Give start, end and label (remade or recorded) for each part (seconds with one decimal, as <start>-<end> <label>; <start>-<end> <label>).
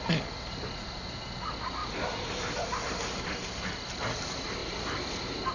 0.0-5.5 recorded